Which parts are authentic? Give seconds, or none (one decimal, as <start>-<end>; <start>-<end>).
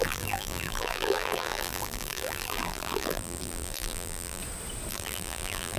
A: 4.4-4.9